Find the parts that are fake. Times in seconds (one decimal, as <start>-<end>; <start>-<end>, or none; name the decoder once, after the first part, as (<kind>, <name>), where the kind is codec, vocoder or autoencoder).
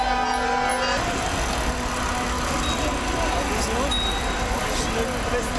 none